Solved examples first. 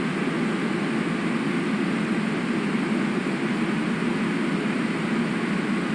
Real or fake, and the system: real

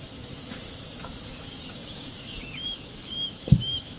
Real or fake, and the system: fake, autoencoder, DAC-VAE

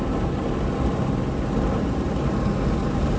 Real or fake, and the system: real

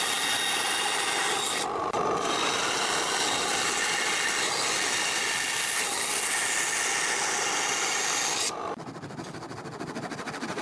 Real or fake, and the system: real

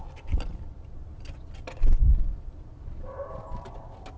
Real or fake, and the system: real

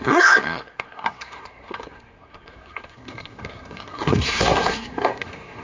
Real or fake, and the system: fake, codec, SNAC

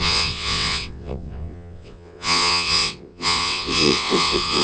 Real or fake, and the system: fake, vocoder, WaveNeXt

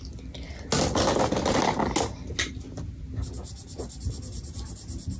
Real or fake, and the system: real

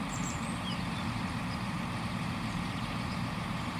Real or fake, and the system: fake, vocoder, BigVGAN v2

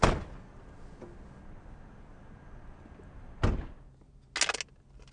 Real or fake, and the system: real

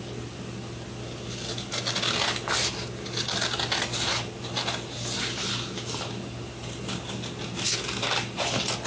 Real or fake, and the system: real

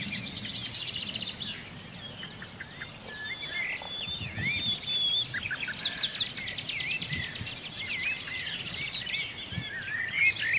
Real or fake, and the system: real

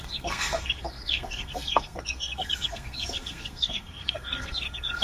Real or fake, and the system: fake, codec, SNAC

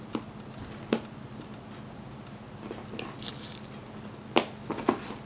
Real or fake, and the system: real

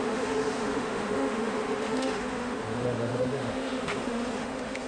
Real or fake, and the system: fake, autoencoder, DAC-VAE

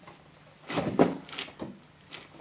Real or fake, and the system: real